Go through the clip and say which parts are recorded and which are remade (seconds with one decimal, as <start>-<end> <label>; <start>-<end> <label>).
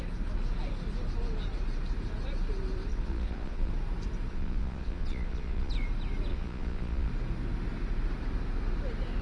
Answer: 0.0-2.9 recorded; 2.9-3.7 remade; 3.7-4.3 recorded; 4.3-5.7 remade; 5.7-6.3 recorded; 6.3-7.1 remade; 7.1-9.2 recorded